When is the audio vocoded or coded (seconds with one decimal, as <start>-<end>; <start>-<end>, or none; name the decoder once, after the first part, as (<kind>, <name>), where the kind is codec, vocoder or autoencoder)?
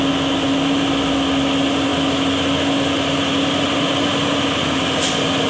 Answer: none